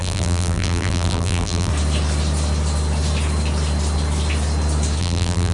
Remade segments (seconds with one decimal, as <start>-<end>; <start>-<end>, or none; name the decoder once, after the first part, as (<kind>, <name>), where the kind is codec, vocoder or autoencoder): 0.0-1.7 (vocoder, BigVGAN v2); 5.0-5.5